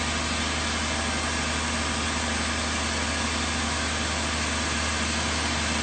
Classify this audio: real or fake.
real